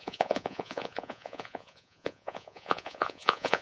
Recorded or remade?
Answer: remade